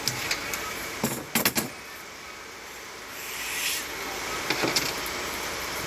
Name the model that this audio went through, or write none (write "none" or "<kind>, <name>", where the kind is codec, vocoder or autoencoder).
none